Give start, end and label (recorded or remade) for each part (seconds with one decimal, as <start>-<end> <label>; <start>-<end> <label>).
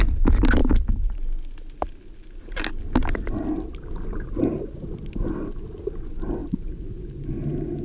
0.0-7.8 recorded